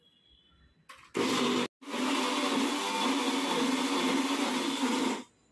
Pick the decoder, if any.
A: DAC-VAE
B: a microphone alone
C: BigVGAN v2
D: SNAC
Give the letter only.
B